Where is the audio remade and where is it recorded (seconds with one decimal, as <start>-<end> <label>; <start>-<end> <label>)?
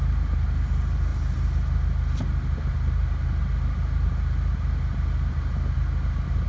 0.0-6.5 recorded